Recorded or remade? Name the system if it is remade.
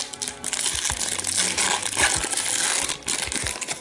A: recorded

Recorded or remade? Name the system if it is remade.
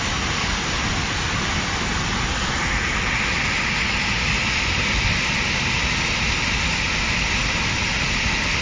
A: recorded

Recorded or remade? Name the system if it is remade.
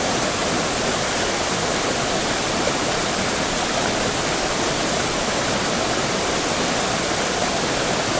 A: remade, vocoder, BigVGAN v2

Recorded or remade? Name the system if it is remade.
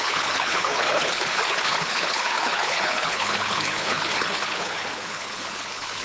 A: remade, codec, HILCodec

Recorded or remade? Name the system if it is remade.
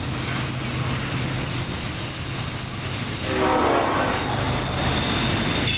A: recorded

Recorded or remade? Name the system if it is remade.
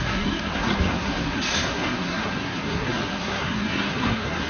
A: remade, codec, SNAC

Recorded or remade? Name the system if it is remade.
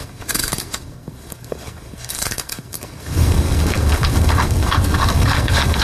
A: remade, codec, SNAC